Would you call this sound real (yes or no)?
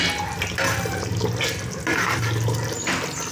yes